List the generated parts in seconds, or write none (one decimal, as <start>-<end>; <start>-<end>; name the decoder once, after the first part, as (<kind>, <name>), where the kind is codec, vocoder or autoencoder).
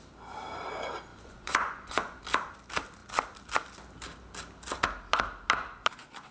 1.1-2.2 (vocoder, Vocos)